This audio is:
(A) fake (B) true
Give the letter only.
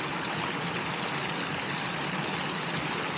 B